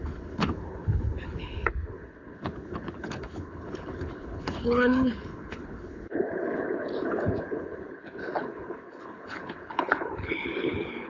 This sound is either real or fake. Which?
fake